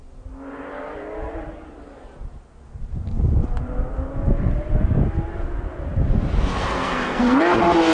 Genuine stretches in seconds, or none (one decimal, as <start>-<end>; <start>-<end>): 0.0-6.6; 7.4-7.9